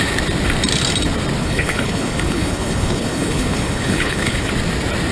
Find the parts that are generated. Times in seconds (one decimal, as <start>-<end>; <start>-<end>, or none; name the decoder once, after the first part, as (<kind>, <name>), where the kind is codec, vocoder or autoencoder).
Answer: 1.4-4.5 (codec, HILCodec)